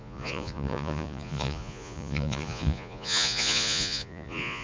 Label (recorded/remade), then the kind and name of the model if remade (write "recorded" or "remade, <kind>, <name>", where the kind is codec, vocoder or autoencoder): remade, vocoder, Vocos